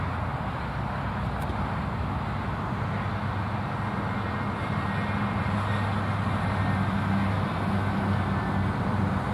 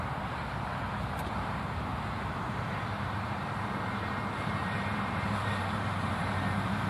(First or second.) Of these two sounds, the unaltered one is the first